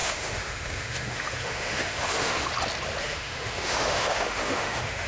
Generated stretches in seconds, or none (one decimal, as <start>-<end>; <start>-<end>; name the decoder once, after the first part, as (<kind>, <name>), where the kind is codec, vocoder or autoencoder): 0.0-2.5 (autoencoder, DAC-VAE); 3.0-5.1